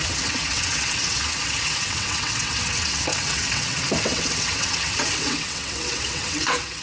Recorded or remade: remade